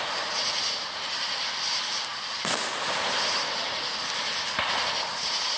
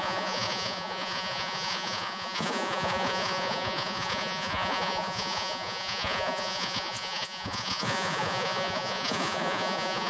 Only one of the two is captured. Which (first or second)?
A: first